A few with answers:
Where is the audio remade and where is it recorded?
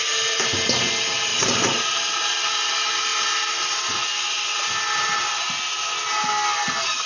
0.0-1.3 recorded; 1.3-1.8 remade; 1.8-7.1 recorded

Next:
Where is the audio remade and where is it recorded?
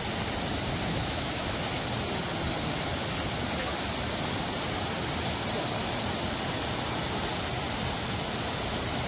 0.0-0.9 recorded; 0.9-1.6 remade; 1.6-9.1 recorded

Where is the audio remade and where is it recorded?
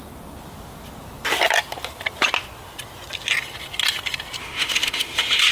0.0-4.4 recorded; 4.4-5.5 remade